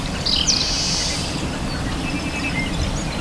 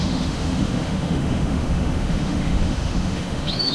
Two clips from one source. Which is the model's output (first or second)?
second